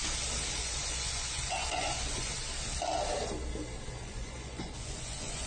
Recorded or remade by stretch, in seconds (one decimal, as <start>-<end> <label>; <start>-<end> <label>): 0.0-0.6 recorded; 0.6-2.3 remade; 2.3-4.0 recorded; 4.0-5.5 remade